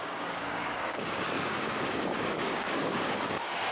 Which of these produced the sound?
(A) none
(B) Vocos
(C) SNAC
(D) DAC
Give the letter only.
D